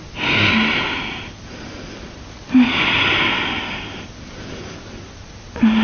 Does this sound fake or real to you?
real